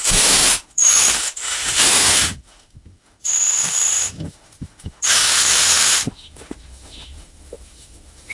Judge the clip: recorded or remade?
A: remade